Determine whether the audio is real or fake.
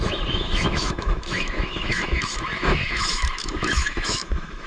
fake